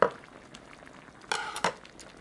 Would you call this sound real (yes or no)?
yes